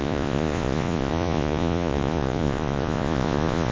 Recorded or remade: remade